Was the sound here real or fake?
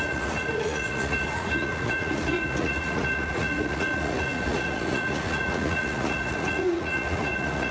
fake